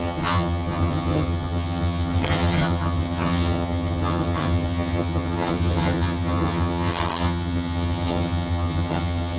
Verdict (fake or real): fake